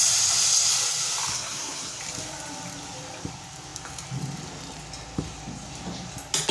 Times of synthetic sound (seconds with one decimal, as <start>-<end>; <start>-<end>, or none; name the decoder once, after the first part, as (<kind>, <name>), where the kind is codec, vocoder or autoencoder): 1.3-2.0 (codec, SNAC)